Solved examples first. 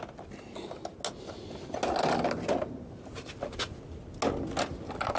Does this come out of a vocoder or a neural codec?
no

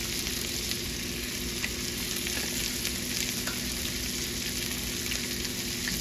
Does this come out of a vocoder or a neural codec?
no